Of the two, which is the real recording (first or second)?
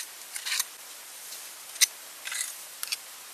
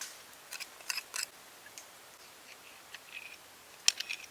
second